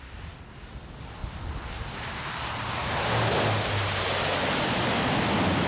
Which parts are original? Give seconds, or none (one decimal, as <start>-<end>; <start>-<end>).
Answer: 0.0-5.7

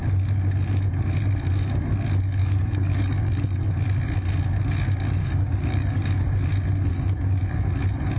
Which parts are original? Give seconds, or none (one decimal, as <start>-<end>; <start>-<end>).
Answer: 0.0-2.4; 3.7-5.2; 6.1-6.9; 7.4-8.2

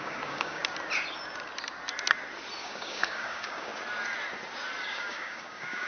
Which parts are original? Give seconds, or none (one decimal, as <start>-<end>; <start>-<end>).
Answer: 0.6-2.6; 3.7-4.8

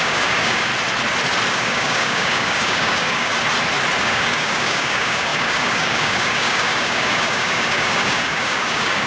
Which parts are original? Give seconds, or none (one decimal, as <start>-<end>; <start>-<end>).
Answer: 0.7-1.5; 3.3-4.0

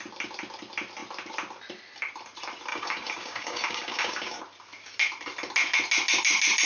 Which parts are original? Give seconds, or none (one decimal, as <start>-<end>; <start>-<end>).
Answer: 0.0-2.7; 4.4-6.7

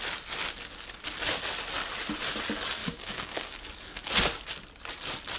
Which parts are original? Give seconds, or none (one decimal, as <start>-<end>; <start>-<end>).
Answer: 0.0-2.8; 4.1-5.4